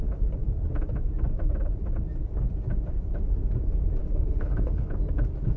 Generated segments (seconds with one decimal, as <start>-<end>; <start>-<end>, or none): 4.0-4.9